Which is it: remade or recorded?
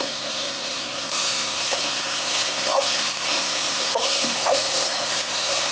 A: remade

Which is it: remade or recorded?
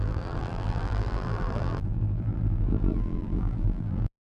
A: remade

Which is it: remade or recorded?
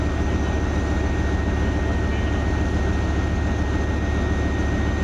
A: recorded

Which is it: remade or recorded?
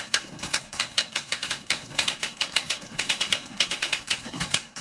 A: remade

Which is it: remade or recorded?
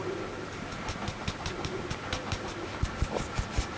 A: recorded